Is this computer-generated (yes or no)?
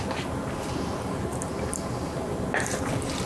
no